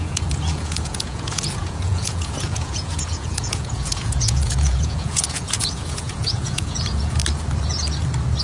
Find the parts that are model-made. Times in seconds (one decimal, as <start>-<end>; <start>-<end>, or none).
0.0-7.2

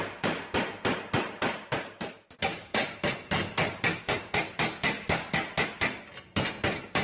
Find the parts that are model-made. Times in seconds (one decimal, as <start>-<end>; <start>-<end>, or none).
none

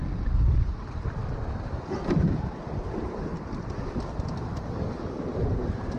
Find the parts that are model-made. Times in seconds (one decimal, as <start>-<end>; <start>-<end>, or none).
0.0-1.2; 3.5-6.0

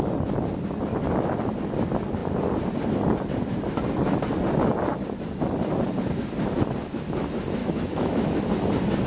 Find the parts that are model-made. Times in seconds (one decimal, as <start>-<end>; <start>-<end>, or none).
7.6-8.4

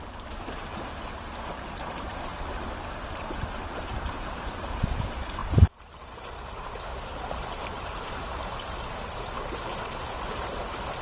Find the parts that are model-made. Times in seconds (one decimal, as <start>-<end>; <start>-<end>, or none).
0.0-6.9; 7.4-11.0

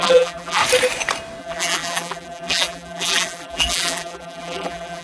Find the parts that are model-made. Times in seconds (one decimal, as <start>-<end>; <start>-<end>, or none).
0.0-0.6; 1.4-5.0

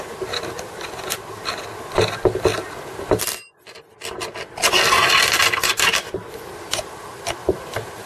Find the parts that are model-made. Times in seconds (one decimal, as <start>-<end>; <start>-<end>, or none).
7.4-8.1

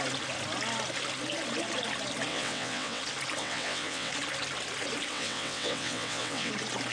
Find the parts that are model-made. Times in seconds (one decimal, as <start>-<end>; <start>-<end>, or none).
2.3-3.0; 3.4-4.1; 5.1-6.5